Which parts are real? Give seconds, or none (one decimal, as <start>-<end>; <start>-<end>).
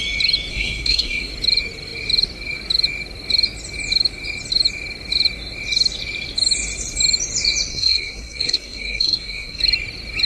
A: 0.0-0.5; 1.3-7.7; 9.6-10.3